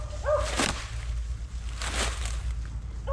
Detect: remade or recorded recorded